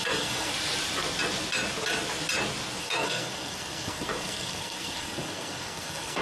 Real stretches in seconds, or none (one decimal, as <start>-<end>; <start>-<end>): 0.5-2.8

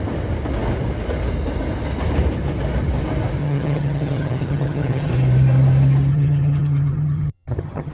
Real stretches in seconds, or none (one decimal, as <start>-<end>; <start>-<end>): 0.0-3.4; 5.1-6.1